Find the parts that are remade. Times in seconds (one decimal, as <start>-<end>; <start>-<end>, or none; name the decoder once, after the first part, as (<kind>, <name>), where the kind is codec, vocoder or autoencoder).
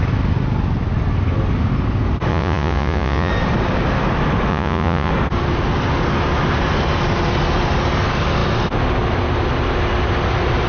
2.3-3.3 (vocoder, Vocos); 4.5-5.1